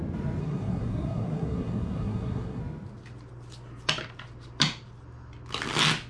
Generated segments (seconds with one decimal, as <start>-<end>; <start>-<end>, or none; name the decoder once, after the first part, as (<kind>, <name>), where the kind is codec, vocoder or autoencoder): 0.4-2.6 (codec, SNAC)